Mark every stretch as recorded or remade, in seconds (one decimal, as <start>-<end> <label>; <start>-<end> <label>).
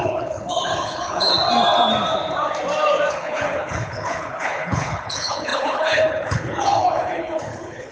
0.0-1.3 remade; 1.3-3.1 recorded; 3.1-7.9 remade